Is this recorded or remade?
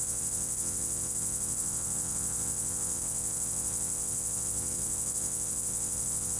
remade